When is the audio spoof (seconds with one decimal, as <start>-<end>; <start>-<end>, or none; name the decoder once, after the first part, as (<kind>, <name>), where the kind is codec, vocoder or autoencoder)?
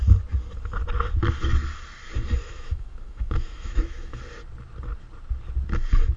2.4-4.2 (autoencoder, DAC-VAE)